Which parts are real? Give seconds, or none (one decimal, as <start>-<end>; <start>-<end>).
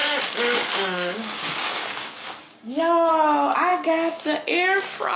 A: 3.1-5.2